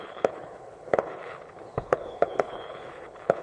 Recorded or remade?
remade